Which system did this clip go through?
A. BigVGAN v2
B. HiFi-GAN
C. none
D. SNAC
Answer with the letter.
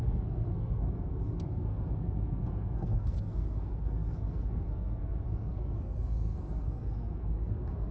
D